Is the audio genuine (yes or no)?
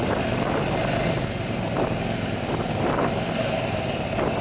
no